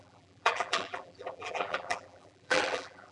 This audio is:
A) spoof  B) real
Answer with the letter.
A